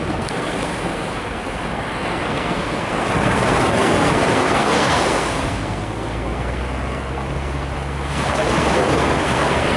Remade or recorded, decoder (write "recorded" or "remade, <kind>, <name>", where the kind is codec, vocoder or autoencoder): remade, codec, SNAC